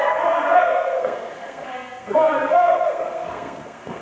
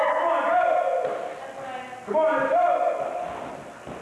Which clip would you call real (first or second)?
second